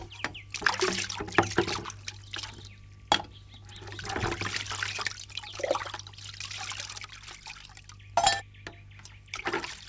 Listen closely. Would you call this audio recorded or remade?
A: recorded